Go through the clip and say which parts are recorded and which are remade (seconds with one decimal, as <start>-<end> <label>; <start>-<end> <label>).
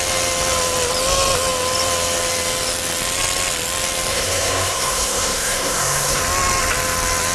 0.0-4.1 recorded; 4.1-6.2 remade; 6.2-7.3 recorded